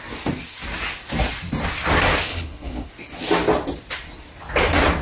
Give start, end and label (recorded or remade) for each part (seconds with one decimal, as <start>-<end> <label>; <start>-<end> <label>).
0.0-2.3 recorded; 2.3-2.9 remade; 2.9-5.0 recorded